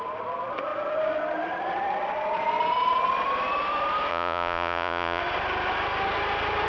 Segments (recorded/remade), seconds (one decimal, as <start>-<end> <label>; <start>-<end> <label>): 0.0-4.1 recorded; 4.1-5.2 remade; 5.2-6.7 recorded